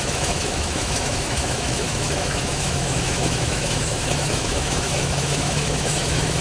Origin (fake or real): fake